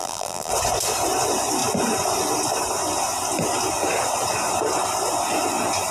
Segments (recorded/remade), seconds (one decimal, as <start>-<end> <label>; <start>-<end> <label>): 0.0-0.5 remade; 0.5-5.9 recorded